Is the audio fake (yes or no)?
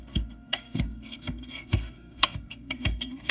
yes